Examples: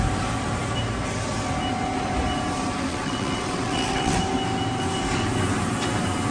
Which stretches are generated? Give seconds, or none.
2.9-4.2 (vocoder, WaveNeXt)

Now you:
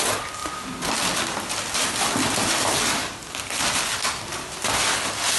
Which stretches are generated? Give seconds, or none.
none

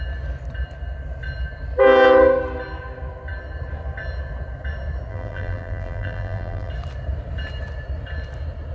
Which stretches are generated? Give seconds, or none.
5.1-6.7 (vocoder, BigVGAN v2)

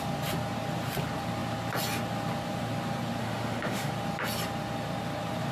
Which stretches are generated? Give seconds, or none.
3.2-3.9 (autoencoder, DAC-VAE)

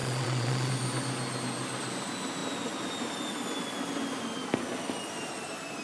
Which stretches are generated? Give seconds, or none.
0.0-0.7 (vocoder, Vocos)

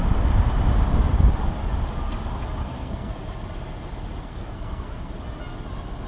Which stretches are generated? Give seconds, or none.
2.6-3.1 (codec, SNAC); 4.2-5.1

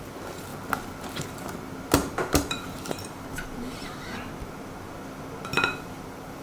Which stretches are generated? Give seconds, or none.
2.0-4.3 (vocoder, BigVGAN v2); 5.5-6.4